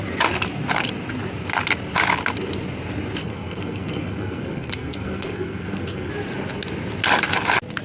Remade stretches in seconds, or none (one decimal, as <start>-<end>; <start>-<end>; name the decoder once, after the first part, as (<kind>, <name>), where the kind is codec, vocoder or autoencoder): 3.2-6.1 (codec, SNAC)